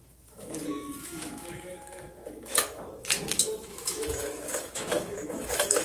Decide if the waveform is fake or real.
fake